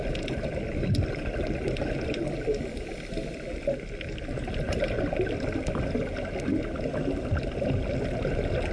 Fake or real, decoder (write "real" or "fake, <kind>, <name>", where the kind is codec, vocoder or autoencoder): real